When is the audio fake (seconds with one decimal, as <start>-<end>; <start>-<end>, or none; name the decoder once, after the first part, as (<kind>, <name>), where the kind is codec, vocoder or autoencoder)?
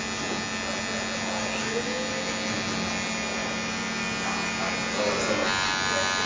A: none